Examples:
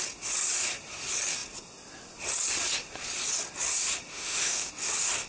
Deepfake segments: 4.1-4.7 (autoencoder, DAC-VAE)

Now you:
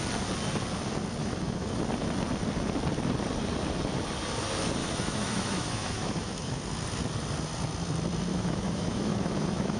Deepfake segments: 1.2-1.8 (autoencoder, DAC-VAE); 4.8-6.6; 8.3-9.8

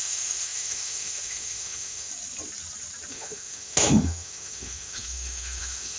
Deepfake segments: 0.0-2.1 (autoencoder, DAC-VAE); 3.1-6.0